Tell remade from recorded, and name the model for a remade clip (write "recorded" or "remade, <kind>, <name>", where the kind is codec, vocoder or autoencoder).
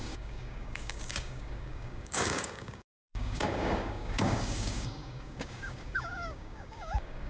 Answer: remade, codec, DAC